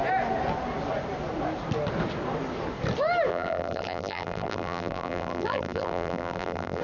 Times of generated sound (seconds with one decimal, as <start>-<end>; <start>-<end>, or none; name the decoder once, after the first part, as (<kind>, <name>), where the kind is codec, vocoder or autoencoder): 3.3-6.8 (vocoder, BigVGAN v2)